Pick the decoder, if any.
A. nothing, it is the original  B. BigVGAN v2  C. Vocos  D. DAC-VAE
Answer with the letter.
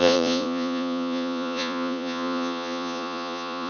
C